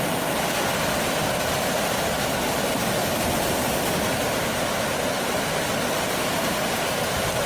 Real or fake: real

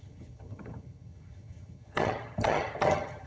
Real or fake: fake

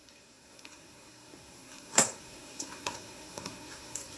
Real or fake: fake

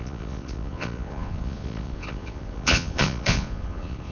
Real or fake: fake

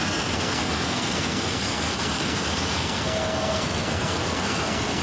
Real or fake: fake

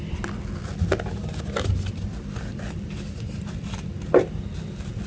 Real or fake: real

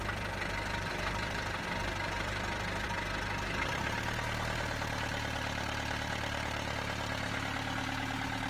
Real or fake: real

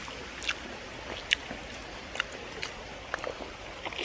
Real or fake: real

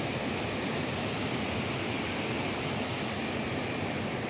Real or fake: real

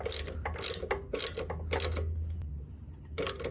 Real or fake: real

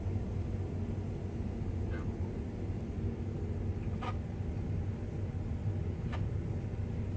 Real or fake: real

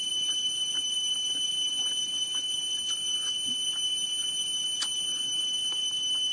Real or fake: real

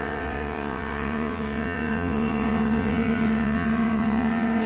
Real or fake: fake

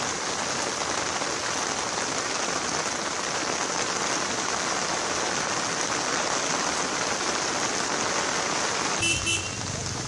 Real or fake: real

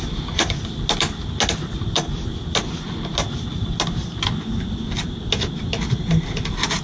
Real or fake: real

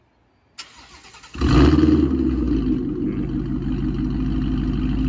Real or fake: real